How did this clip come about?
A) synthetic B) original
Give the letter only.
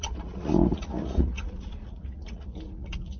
A